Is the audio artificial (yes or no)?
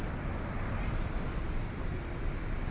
no